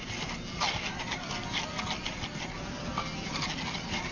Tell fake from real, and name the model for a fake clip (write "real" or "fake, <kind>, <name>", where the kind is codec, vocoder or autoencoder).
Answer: real